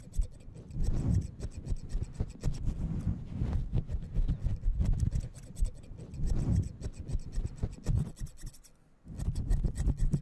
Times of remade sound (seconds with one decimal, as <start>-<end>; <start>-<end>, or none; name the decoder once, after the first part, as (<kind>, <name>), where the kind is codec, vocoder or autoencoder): none